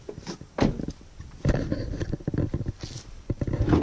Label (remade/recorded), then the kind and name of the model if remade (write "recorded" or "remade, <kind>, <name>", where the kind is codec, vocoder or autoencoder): recorded